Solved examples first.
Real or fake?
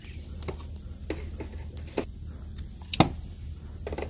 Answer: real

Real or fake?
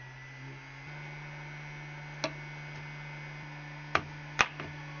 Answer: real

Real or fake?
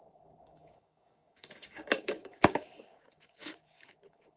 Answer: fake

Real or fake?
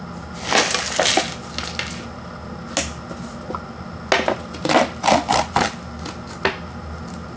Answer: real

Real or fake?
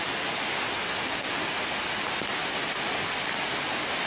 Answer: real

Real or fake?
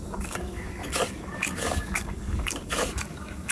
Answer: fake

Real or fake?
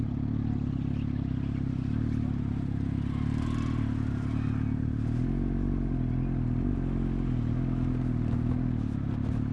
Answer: real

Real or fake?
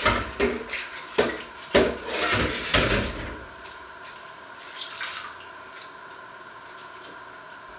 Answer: real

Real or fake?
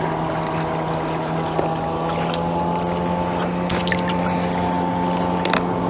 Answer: real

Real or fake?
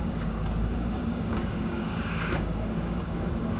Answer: fake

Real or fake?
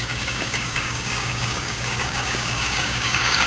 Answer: fake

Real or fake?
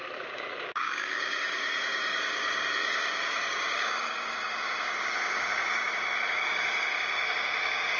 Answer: fake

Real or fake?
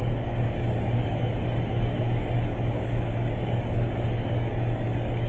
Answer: fake